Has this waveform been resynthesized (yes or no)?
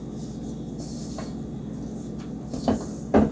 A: no